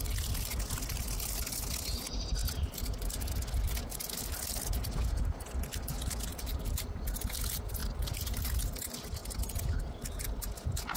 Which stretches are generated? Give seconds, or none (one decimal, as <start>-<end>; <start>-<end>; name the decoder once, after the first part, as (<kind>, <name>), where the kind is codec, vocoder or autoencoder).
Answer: 6.3-7.0 (vocoder, BigVGAN v2); 7.8-8.4